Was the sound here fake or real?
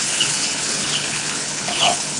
fake